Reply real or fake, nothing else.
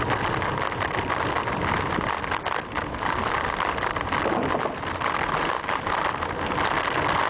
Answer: real